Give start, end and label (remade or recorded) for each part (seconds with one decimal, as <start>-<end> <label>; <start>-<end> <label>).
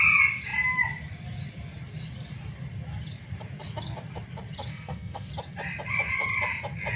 0.0-4.7 recorded; 4.7-5.3 remade; 5.3-7.0 recorded